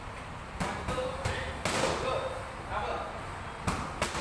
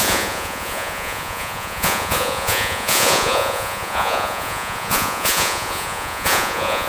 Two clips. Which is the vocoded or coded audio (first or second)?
second